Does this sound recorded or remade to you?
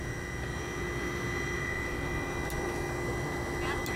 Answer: recorded